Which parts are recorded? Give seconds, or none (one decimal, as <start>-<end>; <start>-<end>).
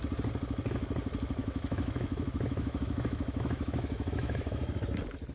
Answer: 0.0-1.4; 4.6-5.3